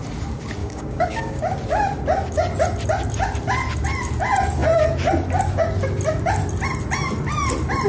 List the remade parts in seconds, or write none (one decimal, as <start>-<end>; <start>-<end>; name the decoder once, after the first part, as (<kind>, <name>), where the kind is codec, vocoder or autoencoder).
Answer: 0.6-1.4 (codec, DAC)